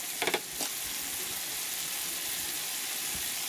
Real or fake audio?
real